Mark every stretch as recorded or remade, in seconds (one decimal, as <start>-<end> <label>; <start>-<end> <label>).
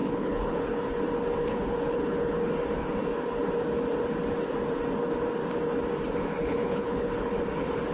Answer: 0.0-1.0 remade; 1.0-1.4 recorded; 1.4-2.5 remade; 2.5-6.3 recorded; 6.3-7.3 remade; 7.3-7.9 recorded